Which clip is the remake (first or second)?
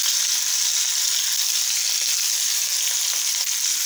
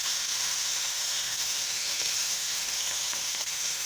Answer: second